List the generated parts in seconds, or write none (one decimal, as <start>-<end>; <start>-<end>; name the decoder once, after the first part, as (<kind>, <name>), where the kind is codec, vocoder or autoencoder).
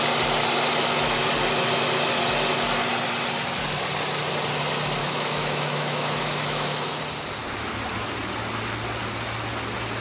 5.0-7.0 (autoencoder, DAC-VAE)